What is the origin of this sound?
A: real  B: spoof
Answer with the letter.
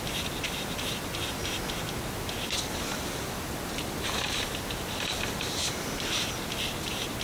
A